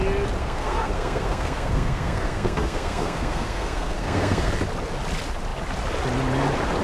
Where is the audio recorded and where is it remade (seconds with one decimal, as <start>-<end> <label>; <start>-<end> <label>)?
0.0-0.4 recorded; 0.4-4.5 remade; 4.5-6.8 recorded